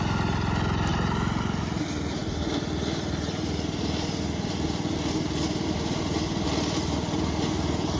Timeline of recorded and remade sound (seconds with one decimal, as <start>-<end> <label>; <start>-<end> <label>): 0.0-0.9 recorded; 0.9-1.8 remade; 1.8-8.0 recorded